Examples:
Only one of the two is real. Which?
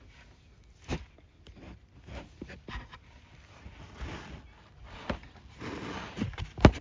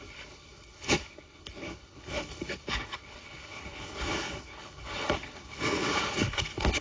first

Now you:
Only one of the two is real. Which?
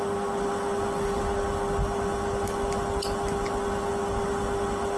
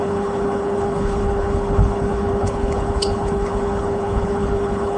first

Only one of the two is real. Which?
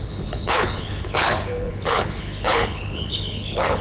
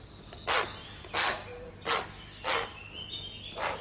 second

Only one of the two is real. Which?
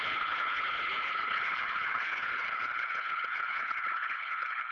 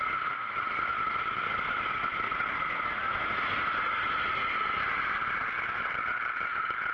second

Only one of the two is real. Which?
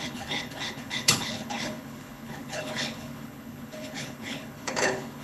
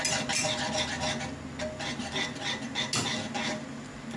second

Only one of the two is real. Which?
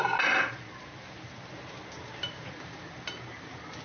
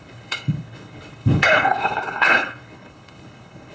first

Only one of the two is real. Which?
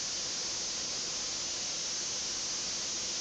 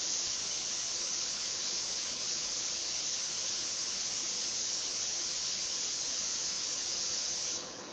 first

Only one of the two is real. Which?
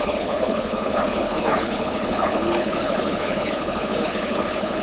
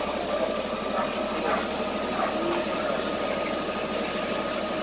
second